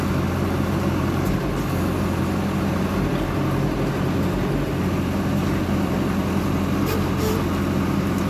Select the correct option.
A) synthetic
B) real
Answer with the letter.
B